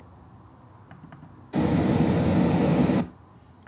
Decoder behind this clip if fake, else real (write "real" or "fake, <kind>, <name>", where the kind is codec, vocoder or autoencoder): real